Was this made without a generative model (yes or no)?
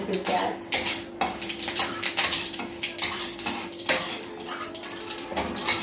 no